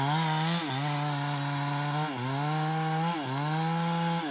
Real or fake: real